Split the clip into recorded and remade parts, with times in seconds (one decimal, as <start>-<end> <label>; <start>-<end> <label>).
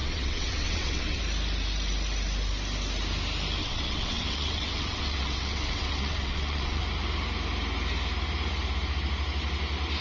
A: 0.0-1.2 remade; 1.2-3.6 recorded; 3.6-6.8 remade; 6.8-10.0 recorded